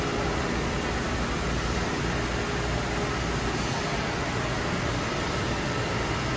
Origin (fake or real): real